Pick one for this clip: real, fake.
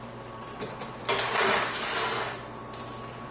real